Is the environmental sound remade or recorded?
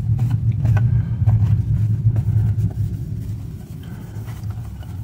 remade